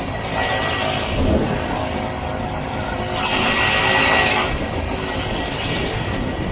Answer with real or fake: real